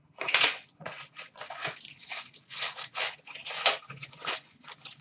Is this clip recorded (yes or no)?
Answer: no